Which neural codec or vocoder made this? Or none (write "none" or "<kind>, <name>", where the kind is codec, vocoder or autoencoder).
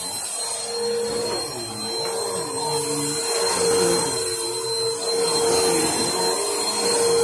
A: none